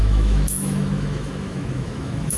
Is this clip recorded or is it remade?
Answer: remade